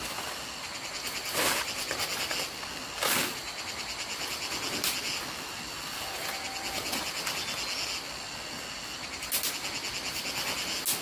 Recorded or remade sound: recorded